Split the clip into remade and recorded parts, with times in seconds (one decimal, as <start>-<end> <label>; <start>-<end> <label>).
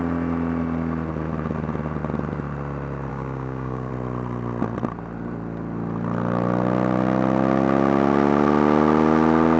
0.0-3.1 recorded; 3.1-3.9 remade; 3.9-9.6 recorded